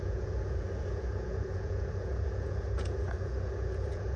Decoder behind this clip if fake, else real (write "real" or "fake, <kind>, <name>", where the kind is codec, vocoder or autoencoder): fake, vocoder, Vocos